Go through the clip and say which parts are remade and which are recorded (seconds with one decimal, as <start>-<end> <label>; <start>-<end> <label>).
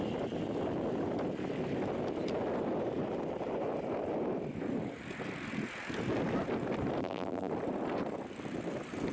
0.0-7.0 recorded; 7.0-7.5 remade; 7.5-9.1 recorded